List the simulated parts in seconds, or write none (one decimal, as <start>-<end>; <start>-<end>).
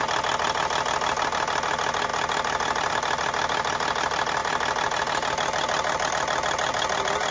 none